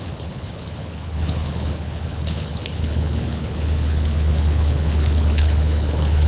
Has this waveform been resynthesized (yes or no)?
yes